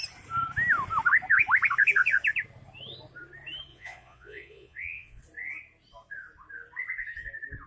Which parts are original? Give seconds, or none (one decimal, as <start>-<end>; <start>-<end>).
0.0-3.7; 5.2-7.7